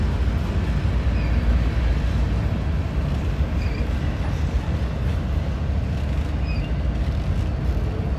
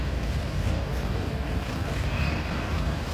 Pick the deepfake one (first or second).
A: second